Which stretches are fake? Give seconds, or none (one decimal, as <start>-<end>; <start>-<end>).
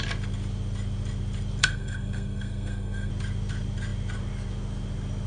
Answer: 1.6-3.1